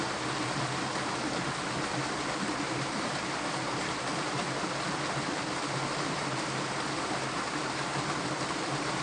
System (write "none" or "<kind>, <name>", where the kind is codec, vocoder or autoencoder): none